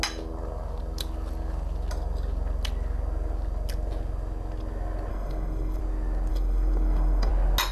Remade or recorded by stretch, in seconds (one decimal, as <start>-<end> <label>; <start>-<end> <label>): 0.0-5.1 recorded; 5.1-5.8 remade; 5.8-6.3 recorded; 6.3-7.3 remade; 7.3-7.7 recorded